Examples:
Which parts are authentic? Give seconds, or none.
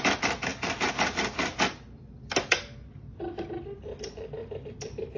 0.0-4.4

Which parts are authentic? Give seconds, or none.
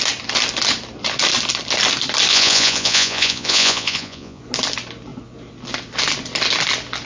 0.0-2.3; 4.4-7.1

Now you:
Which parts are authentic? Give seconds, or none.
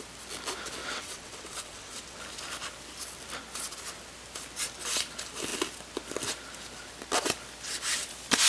0.0-0.8; 2.2-8.5